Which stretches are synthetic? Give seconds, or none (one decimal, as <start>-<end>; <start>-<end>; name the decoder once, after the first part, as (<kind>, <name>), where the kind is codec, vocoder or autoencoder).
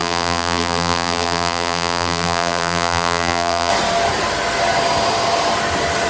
0.0-3.7 (vocoder, BigVGAN v2)